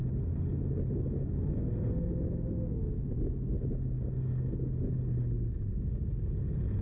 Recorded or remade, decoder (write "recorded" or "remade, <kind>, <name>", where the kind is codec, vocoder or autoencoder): recorded